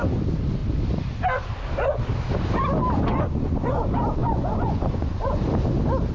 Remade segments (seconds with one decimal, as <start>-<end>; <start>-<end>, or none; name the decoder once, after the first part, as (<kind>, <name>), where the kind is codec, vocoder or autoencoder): 3.1-3.8 (vocoder, Vocos); 4.2-5.4